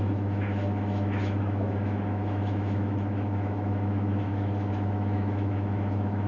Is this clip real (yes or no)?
no